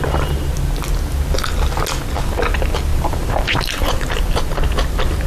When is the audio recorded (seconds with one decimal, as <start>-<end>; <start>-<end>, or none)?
0.0-2.9; 4.2-5.3